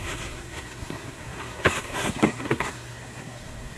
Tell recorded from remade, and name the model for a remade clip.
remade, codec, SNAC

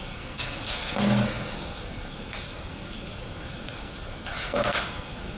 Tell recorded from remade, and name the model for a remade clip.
remade, codec, SNAC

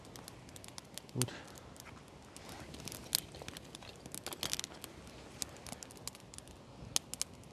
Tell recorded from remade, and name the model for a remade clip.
recorded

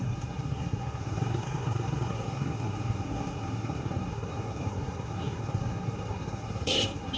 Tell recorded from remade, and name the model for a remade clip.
remade, codec, SNAC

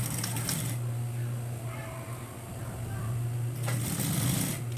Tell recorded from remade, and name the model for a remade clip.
recorded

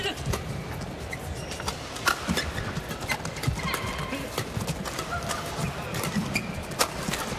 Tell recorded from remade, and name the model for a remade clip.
recorded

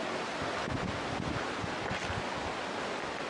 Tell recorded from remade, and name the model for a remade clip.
recorded